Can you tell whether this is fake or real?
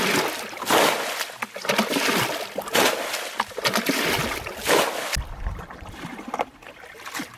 real